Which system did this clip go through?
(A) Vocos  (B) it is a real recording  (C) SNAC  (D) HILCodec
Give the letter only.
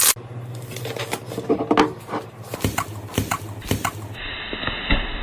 B